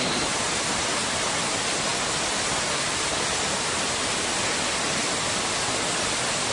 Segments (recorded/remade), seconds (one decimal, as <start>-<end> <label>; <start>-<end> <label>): 0.0-6.5 recorded